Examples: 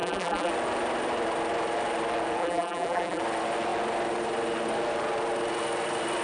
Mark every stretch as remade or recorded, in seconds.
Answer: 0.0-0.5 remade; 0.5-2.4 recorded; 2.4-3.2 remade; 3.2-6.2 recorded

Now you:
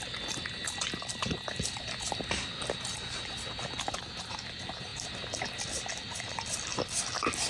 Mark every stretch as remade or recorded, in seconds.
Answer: 0.0-7.5 recorded

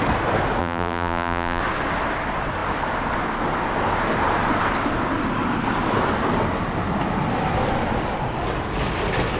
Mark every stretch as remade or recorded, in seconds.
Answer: 0.0-0.6 recorded; 0.6-1.6 remade; 1.6-9.4 recorded

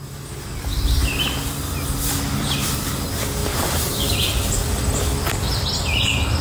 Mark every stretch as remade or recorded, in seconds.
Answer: 0.0-3.4 recorded; 3.4-5.0 remade; 5.0-6.4 recorded